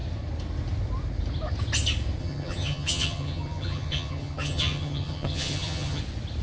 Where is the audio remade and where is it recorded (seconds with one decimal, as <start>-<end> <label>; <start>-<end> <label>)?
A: 0.0-2.2 recorded; 2.2-6.0 remade; 6.0-6.4 recorded